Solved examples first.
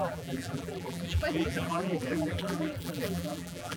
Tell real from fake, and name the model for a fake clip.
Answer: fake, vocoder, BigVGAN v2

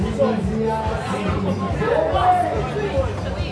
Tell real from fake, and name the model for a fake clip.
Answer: real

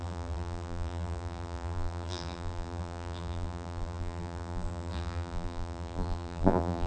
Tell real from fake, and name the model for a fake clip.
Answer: fake, vocoder, BigVGAN v2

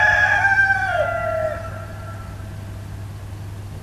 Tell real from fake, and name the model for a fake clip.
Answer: real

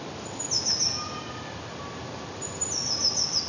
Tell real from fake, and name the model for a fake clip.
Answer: real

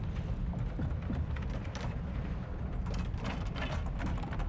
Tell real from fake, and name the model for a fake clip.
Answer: fake, vocoder, BigVGAN v2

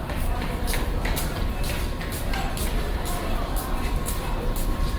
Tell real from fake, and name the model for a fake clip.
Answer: fake, vocoder, BigVGAN v2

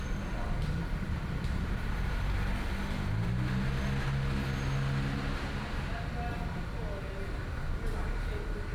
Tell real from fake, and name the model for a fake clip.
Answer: real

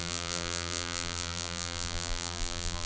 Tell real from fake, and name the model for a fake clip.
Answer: fake, vocoder, BigVGAN v2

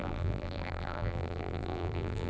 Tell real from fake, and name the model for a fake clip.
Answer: fake, vocoder, BigVGAN v2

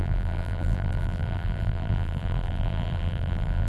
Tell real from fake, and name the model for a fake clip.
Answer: fake, vocoder, BigVGAN v2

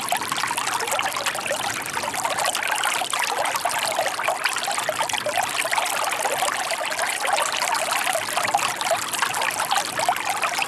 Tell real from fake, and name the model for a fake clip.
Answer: real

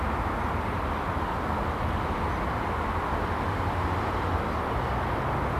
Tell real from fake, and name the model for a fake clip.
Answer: real